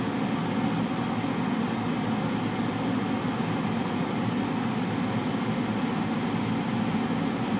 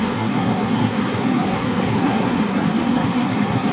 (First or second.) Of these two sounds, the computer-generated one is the second